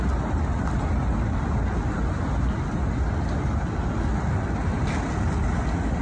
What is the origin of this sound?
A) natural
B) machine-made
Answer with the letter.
A